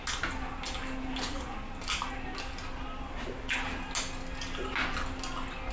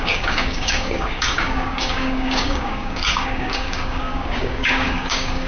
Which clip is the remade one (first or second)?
second